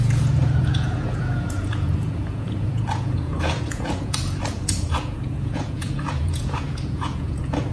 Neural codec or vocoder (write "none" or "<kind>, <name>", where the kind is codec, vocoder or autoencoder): vocoder, Vocos